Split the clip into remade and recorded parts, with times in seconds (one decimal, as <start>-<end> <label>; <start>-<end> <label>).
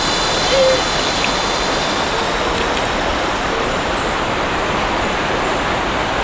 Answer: 0.0-3.1 recorded; 3.1-5.2 remade; 5.2-6.2 recorded